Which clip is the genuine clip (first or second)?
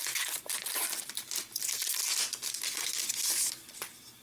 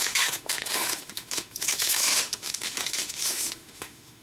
first